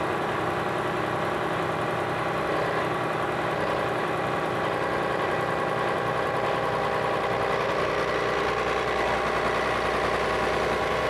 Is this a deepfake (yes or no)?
no